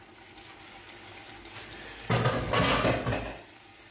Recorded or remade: recorded